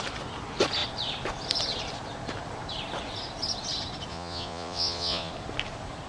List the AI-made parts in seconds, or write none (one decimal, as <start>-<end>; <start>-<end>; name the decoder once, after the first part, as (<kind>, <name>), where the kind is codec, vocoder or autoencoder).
4.1-5.3 (vocoder, Vocos)